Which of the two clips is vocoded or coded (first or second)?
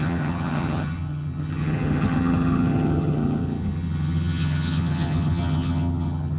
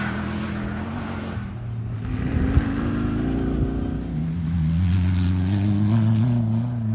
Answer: first